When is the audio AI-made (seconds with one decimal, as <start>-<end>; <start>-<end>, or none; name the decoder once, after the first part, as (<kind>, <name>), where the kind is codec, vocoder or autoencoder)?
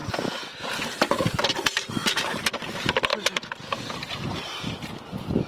0.0-1.4 (vocoder, BigVGAN v2)